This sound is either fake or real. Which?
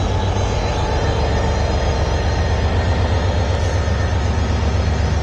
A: real